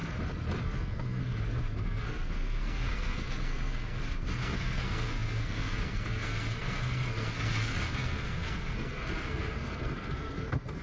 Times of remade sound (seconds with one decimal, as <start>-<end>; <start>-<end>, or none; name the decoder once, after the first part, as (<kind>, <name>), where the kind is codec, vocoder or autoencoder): 0.6-10.8 (codec, SNAC)